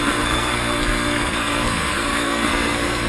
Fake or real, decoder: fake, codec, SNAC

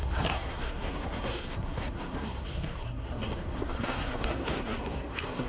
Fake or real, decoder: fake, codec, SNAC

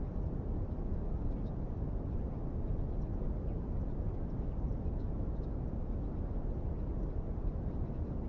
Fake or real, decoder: real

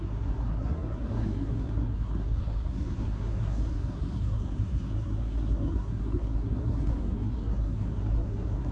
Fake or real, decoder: fake, codec, SNAC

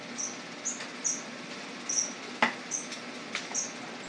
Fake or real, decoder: real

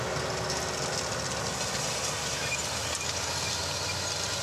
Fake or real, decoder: real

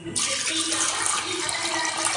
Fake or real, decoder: real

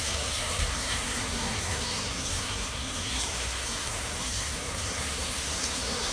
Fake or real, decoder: fake, codec, SNAC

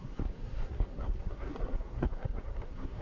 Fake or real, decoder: fake, codec, SNAC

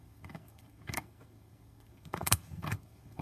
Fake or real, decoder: fake, codec, SNAC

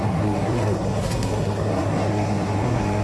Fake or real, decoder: fake, codec, SNAC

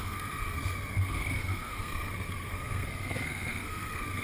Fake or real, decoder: fake, codec, SNAC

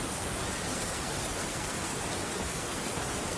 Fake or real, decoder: fake, codec, SNAC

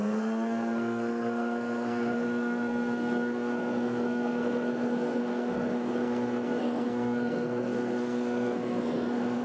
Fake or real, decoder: fake, codec, SNAC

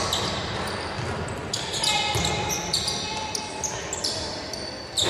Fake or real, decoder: real